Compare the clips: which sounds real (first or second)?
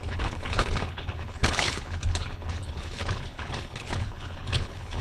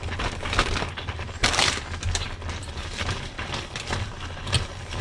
second